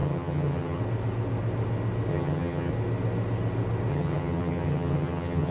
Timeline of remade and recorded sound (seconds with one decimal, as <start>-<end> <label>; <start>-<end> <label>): 0.0-0.8 remade; 0.8-2.1 recorded; 2.1-2.7 remade; 2.7-3.9 recorded; 3.9-5.5 remade